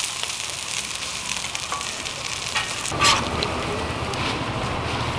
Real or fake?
real